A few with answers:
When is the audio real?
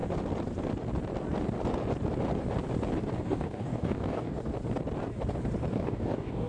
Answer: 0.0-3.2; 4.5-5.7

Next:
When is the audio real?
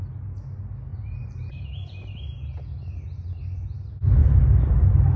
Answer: 0.0-0.9; 1.5-4.2; 4.7-5.2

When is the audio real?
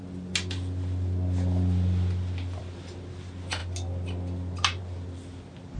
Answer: 0.0-5.8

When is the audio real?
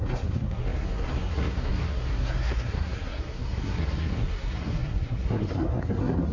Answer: none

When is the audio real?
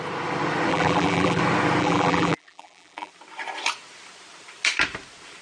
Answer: 0.0-0.7; 1.4-1.8; 3.1-5.4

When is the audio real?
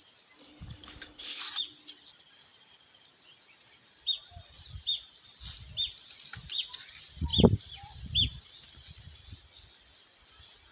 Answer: 0.0-0.4; 1.4-10.7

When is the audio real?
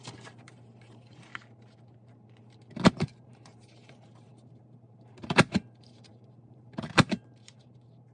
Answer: 1.3-2.9